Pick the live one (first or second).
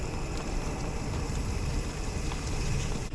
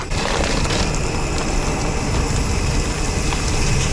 second